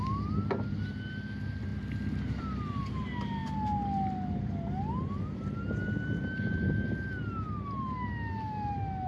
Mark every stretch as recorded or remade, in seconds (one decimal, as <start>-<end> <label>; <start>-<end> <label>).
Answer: 0.0-9.1 recorded